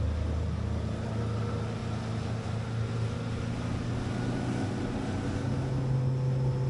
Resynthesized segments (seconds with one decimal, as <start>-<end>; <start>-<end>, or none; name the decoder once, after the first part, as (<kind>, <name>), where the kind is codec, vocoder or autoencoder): none